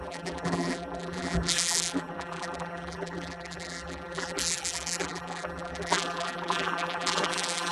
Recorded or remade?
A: remade